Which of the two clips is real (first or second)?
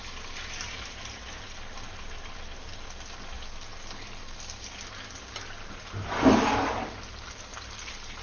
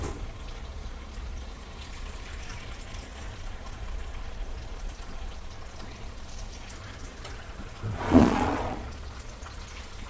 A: first